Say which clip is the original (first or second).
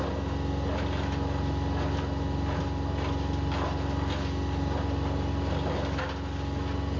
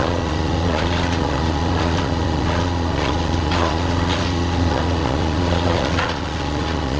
first